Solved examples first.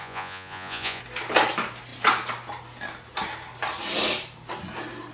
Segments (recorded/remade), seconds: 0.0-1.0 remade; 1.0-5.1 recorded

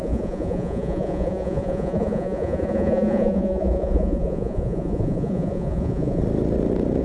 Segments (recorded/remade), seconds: 0.0-6.2 remade; 6.2-7.0 recorded

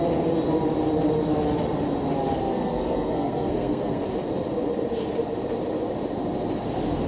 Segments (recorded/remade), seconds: 0.0-2.5 recorded; 2.5-4.0 remade; 4.0-7.1 recorded

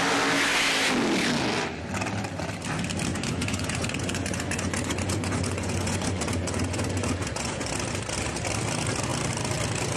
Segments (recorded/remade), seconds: 0.0-3.1 recorded; 3.1-7.7 remade; 7.7-10.0 recorded